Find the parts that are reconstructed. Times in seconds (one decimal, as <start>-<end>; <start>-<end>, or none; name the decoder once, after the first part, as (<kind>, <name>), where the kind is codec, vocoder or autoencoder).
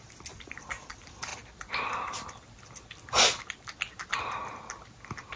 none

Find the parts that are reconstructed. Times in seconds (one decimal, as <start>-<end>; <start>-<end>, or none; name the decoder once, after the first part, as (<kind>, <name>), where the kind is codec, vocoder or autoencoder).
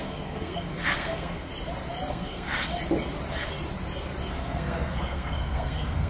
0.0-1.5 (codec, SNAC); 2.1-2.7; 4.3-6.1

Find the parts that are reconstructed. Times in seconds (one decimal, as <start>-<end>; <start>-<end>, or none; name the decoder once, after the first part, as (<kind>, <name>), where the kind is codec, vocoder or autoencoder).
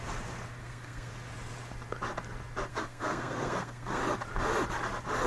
0.6-1.1 (codec, SNAC); 2.7-4.0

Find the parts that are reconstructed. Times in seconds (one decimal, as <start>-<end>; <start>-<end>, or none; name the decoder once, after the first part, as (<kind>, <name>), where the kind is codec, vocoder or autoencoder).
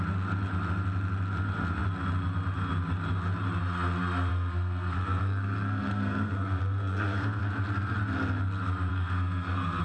4.3-7.4 (codec, SNAC); 8.9-9.8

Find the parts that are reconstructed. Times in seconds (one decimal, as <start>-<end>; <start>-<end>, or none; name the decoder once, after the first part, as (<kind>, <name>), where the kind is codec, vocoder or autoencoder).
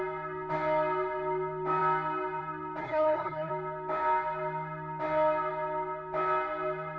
2.8-3.5 (codec, SNAC)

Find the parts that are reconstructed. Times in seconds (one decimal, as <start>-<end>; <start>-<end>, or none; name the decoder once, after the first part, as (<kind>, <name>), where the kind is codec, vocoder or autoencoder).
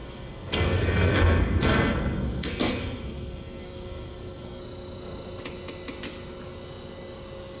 0.0-4.6 (codec, SNAC)